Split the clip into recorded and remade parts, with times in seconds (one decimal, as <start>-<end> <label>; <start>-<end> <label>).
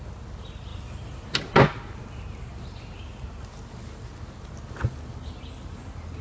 0.0-6.2 recorded